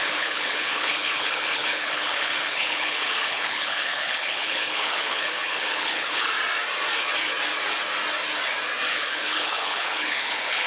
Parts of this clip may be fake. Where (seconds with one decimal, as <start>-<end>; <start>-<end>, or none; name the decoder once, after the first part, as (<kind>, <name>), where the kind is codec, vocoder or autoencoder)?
0.0-6.3 (codec, HILCodec); 8.9-10.7